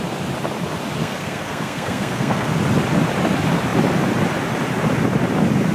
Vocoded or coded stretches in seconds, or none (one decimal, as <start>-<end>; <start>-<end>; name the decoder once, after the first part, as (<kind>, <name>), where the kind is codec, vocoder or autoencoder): 1.0-2.5 (codec, SNAC)